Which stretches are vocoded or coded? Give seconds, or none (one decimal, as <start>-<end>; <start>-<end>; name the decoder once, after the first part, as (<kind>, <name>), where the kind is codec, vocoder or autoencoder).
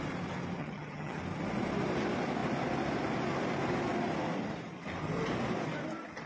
0.6-1.2 (vocoder, HiFi-GAN)